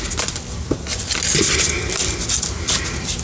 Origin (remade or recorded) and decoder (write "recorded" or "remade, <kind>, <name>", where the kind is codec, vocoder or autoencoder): recorded